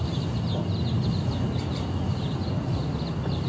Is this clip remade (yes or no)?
no